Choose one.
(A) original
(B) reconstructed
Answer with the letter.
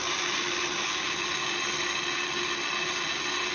A